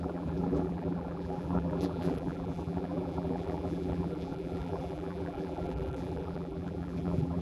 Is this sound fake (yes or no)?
yes